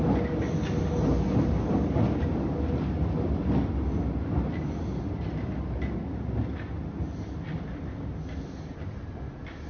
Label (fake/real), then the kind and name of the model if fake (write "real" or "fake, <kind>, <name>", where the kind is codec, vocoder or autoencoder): real